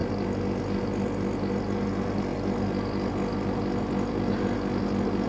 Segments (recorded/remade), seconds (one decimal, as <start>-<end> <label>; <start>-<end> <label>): 0.0-0.8 recorded; 0.8-5.3 remade